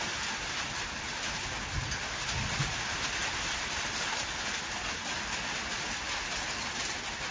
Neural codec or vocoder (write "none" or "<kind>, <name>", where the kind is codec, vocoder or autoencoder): none